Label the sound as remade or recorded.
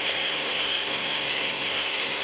remade